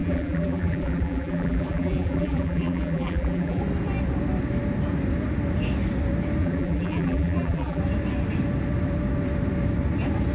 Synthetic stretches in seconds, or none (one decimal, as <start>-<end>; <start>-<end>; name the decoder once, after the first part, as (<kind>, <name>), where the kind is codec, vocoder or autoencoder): 0.0-3.6 (vocoder, BigVGAN v2); 6.4-7.8